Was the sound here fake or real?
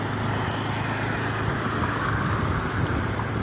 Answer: real